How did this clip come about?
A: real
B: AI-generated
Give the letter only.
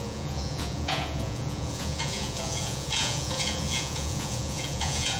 B